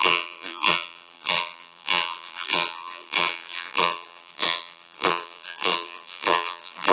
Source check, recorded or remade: remade